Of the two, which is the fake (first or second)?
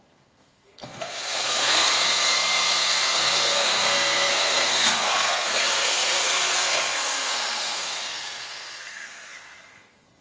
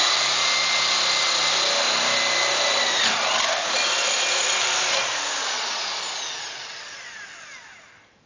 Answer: first